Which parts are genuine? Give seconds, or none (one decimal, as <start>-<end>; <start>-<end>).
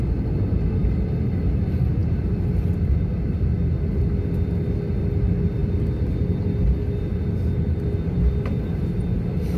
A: 0.0-9.6